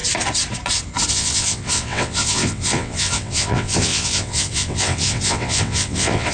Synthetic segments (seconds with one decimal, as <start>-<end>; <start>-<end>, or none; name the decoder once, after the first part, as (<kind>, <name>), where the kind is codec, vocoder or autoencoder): 1.1-6.3 (vocoder, WaveNeXt)